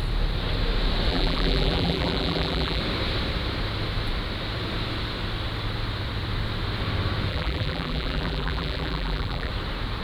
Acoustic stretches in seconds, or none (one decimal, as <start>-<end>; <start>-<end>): 0.0-1.1; 2.8-7.3; 9.5-10.0